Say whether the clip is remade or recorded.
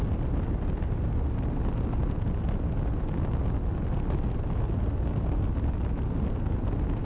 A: recorded